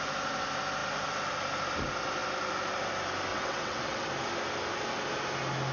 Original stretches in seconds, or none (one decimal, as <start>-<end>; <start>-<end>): 0.0-3.3; 4.1-5.7